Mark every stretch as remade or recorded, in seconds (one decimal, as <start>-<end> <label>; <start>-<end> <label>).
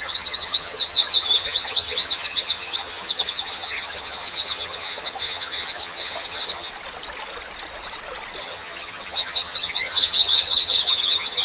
0.0-6.7 remade; 6.7-8.4 recorded; 8.4-11.4 remade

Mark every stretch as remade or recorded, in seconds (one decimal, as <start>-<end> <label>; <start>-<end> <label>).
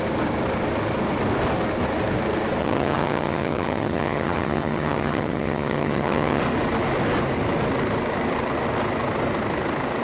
0.0-2.6 recorded; 2.6-6.4 remade; 6.4-10.0 recorded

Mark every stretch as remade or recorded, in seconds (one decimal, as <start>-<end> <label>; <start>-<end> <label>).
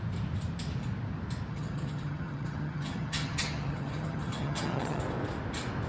0.0-1.5 recorded; 1.5-5.0 remade; 5.0-5.9 recorded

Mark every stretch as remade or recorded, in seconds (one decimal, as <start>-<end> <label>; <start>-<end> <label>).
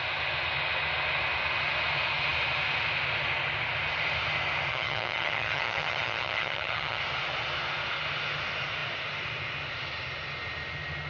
0.0-4.7 recorded; 4.7-7.0 remade; 7.0-11.1 recorded